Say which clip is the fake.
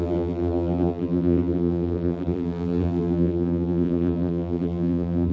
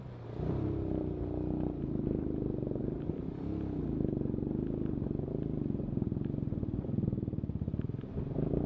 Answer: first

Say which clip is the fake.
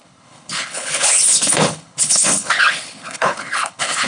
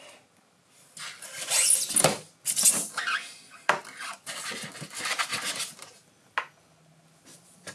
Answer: first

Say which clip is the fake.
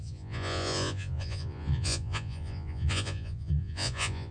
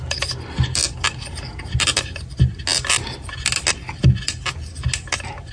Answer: first